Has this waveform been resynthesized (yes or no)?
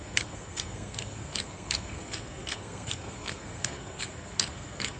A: yes